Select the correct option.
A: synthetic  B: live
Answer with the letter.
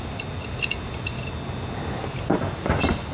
B